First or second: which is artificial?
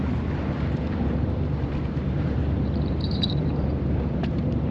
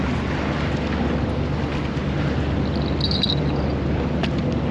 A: first